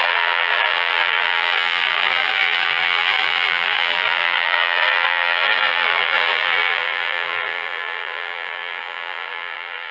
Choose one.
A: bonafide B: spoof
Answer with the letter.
B